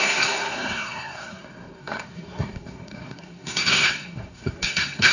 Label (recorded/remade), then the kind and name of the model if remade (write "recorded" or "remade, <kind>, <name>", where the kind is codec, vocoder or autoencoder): remade, codec, SNAC